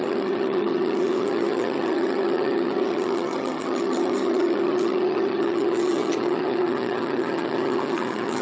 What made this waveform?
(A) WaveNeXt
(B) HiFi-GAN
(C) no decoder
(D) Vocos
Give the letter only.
B